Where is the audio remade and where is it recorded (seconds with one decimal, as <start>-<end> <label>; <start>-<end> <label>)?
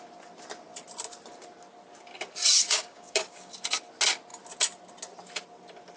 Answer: 0.0-2.4 recorded; 2.4-3.5 remade; 3.5-6.0 recorded